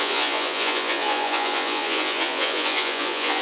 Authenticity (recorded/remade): remade